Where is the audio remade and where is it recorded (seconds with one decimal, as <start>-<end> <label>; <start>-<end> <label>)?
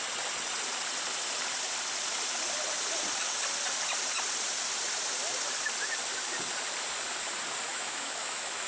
0.0-7.7 recorded; 7.7-8.7 remade